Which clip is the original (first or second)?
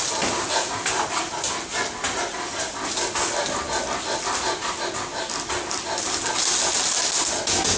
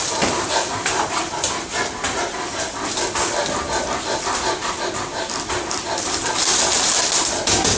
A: first